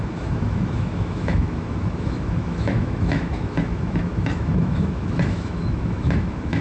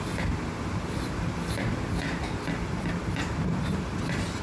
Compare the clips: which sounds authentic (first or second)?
second